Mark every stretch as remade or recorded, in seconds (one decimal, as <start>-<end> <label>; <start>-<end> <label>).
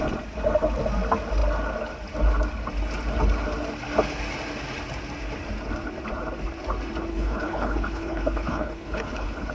0.0-7.1 recorded; 7.1-9.5 remade